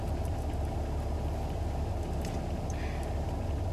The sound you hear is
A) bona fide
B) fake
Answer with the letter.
A